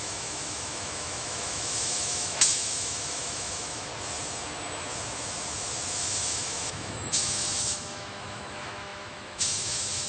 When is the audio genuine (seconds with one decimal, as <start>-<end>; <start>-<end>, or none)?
3.9-6.0